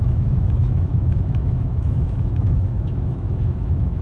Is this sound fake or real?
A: fake